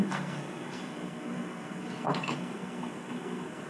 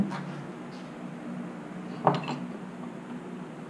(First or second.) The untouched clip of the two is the second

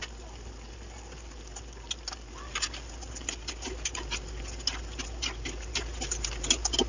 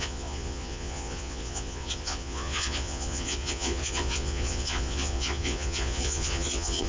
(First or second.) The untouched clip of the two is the first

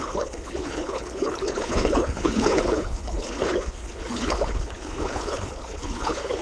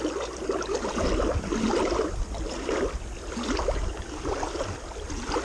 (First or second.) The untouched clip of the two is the second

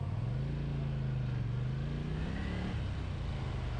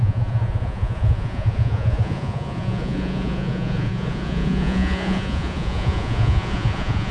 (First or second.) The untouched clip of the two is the first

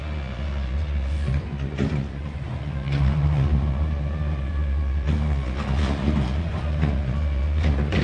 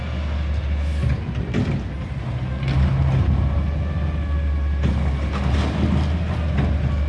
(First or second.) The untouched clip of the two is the second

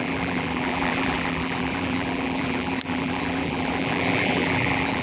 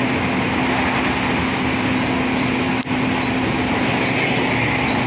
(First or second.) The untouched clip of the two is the second